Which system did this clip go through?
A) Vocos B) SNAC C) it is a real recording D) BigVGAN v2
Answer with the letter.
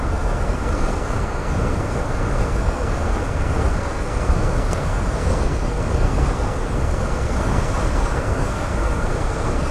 B